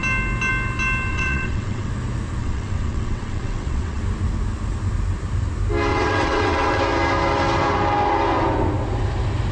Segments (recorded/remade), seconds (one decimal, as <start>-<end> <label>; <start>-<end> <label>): 0.0-1.1 recorded; 1.1-1.9 remade; 1.9-2.4 recorded; 2.4-4.0 remade; 4.0-5.9 recorded; 5.9-6.8 remade; 6.8-9.5 recorded